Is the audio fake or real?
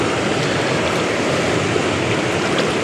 real